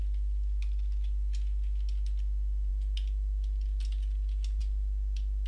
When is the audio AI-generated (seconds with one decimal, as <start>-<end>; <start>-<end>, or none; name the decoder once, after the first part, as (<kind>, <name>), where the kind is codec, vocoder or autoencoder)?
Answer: none